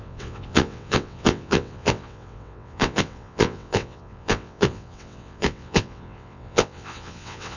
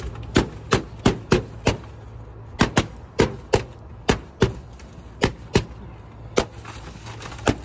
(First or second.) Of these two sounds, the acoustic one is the second